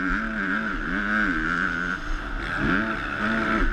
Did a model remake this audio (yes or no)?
no